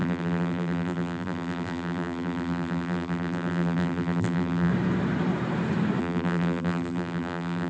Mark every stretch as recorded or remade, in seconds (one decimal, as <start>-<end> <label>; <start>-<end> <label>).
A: 0.0-4.7 remade; 4.7-6.0 recorded; 6.0-7.7 remade